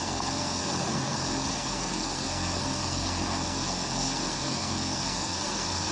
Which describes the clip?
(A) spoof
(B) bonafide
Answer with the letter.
A